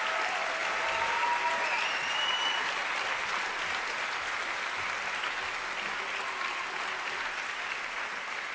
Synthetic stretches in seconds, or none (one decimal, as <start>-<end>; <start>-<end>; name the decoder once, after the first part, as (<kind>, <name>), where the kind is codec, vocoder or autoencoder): none